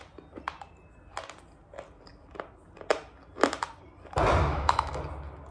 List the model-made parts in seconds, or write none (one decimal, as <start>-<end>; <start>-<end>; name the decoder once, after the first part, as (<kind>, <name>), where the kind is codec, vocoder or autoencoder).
4.5-5.0 (autoencoder, DAC-VAE)